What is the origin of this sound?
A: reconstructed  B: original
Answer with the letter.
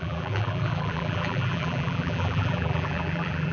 A